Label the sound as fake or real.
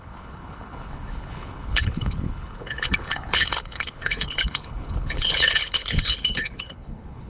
fake